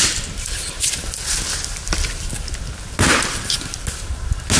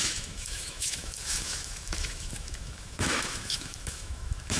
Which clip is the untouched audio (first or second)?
first